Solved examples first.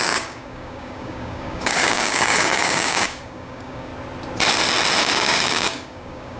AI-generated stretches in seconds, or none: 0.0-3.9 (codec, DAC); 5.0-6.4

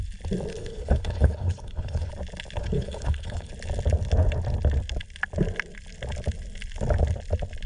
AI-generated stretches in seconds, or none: 0.5-2.1 (codec, HILCodec); 2.6-3.5